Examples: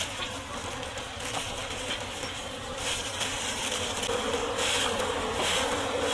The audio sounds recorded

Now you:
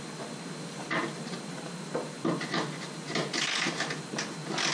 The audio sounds recorded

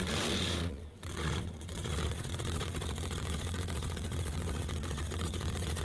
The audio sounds remade